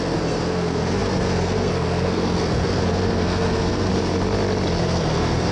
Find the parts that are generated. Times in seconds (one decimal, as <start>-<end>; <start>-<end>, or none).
0.0-3.9; 4.8-5.5

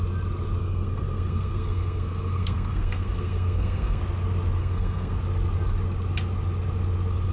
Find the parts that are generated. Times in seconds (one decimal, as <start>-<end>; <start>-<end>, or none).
0.6-4.0; 4.6-5.2

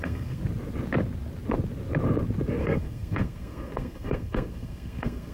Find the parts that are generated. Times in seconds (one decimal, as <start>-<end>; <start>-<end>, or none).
0.0-0.4; 2.6-5.3

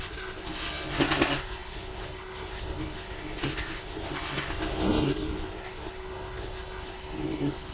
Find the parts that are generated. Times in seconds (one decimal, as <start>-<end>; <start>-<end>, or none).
0.0-7.7

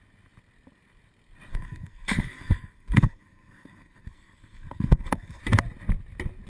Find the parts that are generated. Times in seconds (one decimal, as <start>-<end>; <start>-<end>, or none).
1.5-5.4

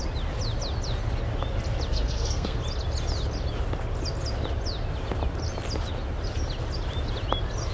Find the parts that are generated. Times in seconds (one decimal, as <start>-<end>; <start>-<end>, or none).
1.9-2.6

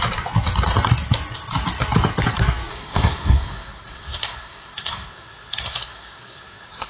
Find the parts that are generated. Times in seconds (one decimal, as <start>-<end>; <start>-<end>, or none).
2.7-6.9